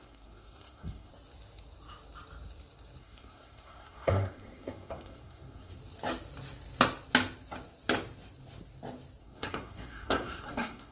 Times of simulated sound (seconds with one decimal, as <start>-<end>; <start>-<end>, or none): 0.0-1.1; 3.0-5.8; 9.2-10.9